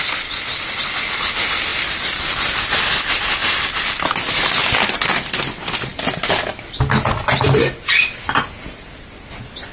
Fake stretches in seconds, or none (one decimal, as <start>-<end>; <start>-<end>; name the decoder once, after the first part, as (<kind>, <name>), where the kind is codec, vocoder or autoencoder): none